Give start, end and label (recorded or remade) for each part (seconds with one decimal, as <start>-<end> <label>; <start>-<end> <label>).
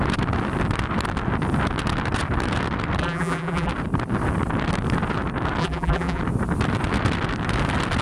0.0-3.0 recorded; 3.0-3.7 remade; 3.7-5.6 recorded; 5.6-6.2 remade; 6.2-8.0 recorded